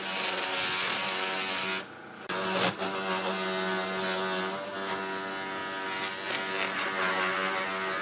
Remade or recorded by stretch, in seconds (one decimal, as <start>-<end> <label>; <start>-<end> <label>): 0.0-8.0 recorded